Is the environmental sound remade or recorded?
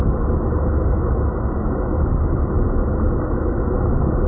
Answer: recorded